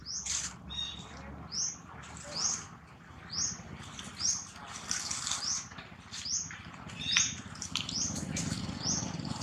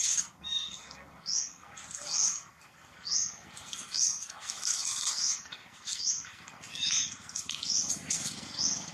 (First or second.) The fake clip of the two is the second